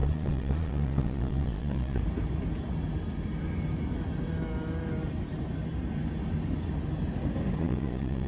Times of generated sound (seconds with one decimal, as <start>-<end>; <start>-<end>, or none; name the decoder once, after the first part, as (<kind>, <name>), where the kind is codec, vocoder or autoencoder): 0.0-2.0 (vocoder, Vocos); 7.6-8.3